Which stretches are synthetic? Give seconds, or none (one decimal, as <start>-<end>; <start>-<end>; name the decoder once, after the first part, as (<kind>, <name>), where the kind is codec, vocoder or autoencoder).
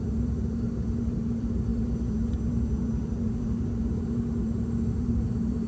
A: 0.0-5.7 (vocoder, BigVGAN v2)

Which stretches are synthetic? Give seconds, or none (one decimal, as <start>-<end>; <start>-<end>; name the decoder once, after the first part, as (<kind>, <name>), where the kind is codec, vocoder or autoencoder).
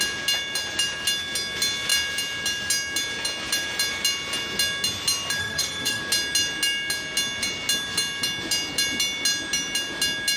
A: 5.4-6.0 (autoencoder, DAC-VAE)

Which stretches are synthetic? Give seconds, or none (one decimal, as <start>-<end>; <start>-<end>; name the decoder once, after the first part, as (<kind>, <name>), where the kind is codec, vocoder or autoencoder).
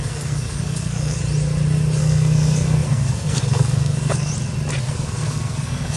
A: 0.0-1.2 (codec, SNAC); 2.0-4.3; 4.8-6.0